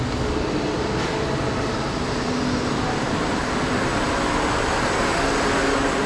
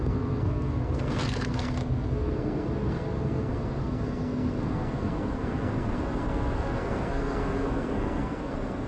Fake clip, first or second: second